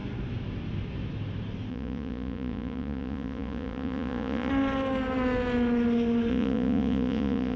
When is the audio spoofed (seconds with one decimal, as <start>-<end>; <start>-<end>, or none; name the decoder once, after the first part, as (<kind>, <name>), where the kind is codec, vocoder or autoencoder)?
1.7-4.5 (vocoder, Vocos); 6.3-7.6